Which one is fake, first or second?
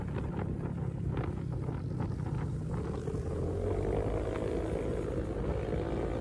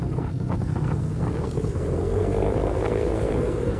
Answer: second